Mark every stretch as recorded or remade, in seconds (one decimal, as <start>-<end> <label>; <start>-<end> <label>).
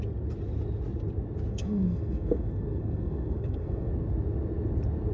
0.0-1.5 recorded; 1.5-3.9 remade; 3.9-5.1 recorded